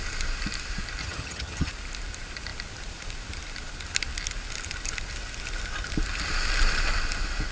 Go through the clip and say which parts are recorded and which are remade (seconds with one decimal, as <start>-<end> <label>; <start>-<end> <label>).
0.0-1.0 recorded; 1.0-1.7 remade; 1.7-7.5 recorded